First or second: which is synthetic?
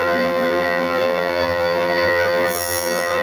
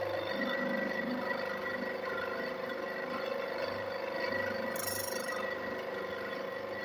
first